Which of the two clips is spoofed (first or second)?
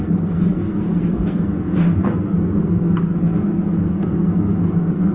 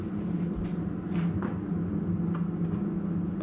first